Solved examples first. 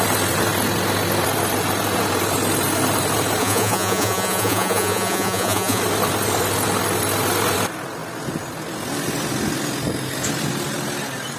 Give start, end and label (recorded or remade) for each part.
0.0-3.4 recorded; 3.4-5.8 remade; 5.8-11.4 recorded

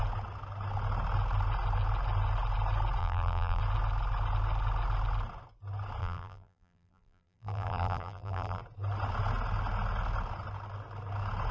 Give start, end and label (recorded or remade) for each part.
0.0-3.0 recorded; 3.0-3.6 remade; 3.6-6.0 recorded; 6.0-8.6 remade; 8.6-11.5 recorded

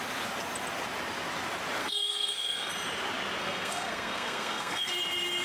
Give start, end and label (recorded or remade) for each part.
0.0-1.8 recorded; 1.8-2.7 remade; 2.7-3.4 recorded; 3.4-4.9 remade; 4.9-5.4 recorded

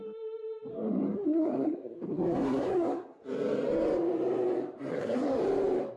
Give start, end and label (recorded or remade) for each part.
0.0-0.7 recorded; 0.7-3.2 remade; 3.2-4.9 recorded; 4.9-5.4 remade; 5.4-6.0 recorded

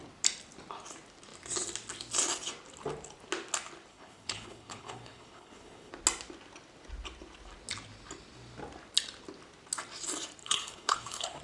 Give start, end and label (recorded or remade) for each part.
0.0-3.9 recorded; 3.9-5.9 remade; 5.9-10.4 recorded; 10.4-11.4 remade

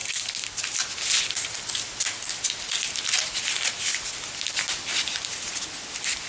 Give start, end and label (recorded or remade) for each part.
0.0-6.3 recorded

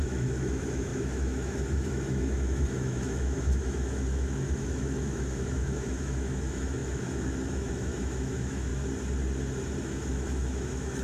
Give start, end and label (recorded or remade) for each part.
0.0-8.7 remade; 8.7-9.8 recorded; 9.8-11.0 remade

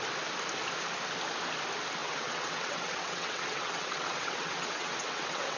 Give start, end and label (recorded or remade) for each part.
0.0-2.0 recorded; 2.0-5.6 remade